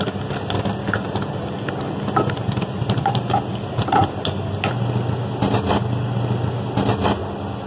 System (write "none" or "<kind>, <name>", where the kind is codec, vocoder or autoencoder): none